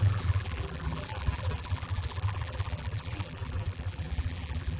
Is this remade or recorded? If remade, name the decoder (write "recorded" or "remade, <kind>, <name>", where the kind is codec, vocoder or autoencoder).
remade, vocoder, BigVGAN v2